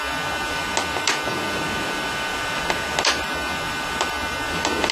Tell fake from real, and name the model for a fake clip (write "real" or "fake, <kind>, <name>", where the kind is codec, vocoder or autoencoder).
real